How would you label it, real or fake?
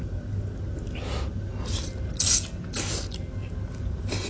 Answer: real